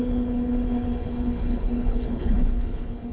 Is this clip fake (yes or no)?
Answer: yes